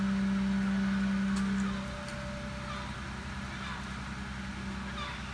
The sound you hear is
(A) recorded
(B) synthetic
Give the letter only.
A